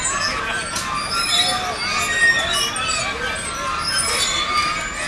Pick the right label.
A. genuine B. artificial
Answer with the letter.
A